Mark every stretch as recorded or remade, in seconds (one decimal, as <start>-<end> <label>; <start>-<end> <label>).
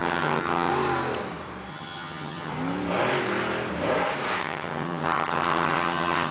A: 0.0-0.7 remade; 0.7-1.7 recorded; 1.7-2.5 remade; 2.5-4.4 recorded; 4.4-6.3 remade